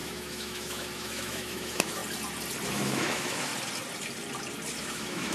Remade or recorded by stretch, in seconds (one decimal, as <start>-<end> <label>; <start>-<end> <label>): 0.0-2.0 remade; 2.0-2.7 recorded; 2.7-3.5 remade; 3.5-4.8 recorded; 4.8-5.3 remade